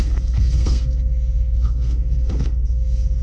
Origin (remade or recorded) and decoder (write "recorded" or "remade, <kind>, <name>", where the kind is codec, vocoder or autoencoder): remade, codec, SNAC